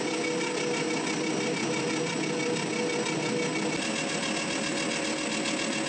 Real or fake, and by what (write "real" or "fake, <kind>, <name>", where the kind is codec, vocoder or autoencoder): real